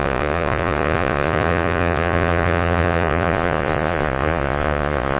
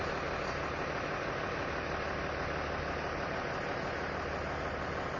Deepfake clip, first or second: first